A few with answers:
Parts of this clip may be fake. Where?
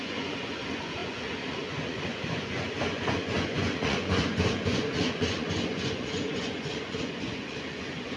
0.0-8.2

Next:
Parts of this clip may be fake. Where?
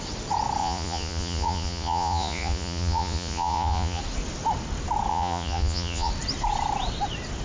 0.6-4.0; 5.1-6.1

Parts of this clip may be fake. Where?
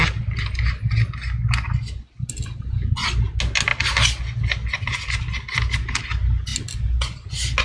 none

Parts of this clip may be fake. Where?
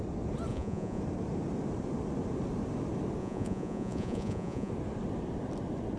0.5-1.0; 3.2-4.7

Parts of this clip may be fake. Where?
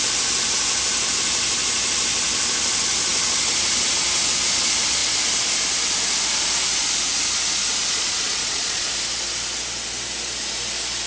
7.8-8.9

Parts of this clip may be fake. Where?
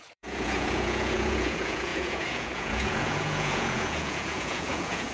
0.0-5.1